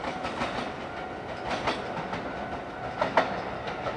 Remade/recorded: recorded